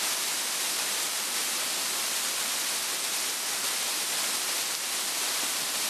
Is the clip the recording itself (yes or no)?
yes